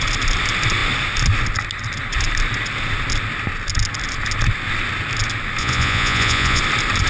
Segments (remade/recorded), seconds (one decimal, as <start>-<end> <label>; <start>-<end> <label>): 0.0-5.6 recorded; 5.6-6.6 remade; 6.6-7.1 recorded